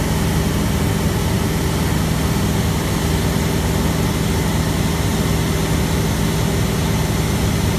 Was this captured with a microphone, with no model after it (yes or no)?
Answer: yes